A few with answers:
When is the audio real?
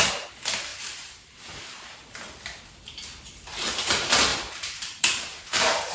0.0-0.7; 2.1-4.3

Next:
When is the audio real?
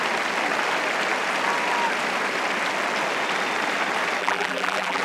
0.0-4.2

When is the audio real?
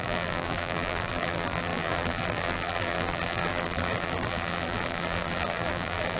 none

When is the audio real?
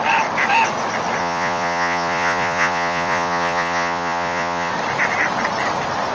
0.0-1.2; 4.7-6.1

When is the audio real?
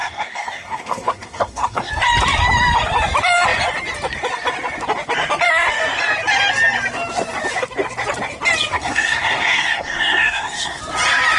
1.9-8.7; 10.8-11.4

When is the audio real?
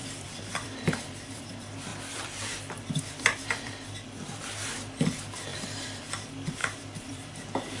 1.4-1.9; 4.4-5.5; 6.0-6.6; 7.3-7.8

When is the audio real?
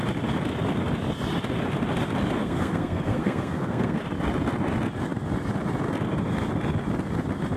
0.0-2.4; 4.0-7.6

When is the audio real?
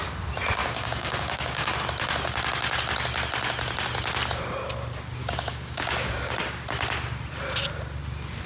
0.0-0.6; 1.7-5.2; 6.3-8.5